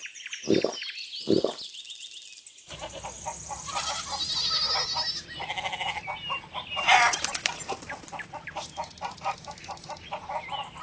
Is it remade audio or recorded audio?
recorded